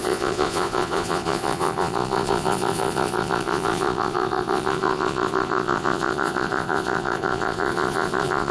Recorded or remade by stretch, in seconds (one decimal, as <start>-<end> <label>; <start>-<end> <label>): 0.0-8.5 remade